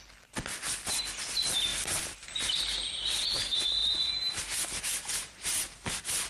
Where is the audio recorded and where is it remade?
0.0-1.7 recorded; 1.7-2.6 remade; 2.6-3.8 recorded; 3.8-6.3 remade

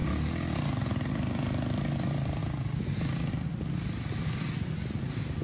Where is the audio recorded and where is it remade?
0.0-1.1 recorded; 1.1-2.4 remade; 2.4-3.3 recorded; 3.3-5.4 remade

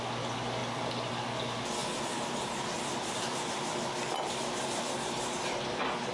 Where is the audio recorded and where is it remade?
0.0-1.8 recorded; 1.8-5.5 remade; 5.5-6.1 recorded

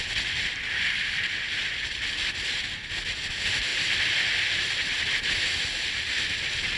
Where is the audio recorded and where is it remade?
0.0-6.8 recorded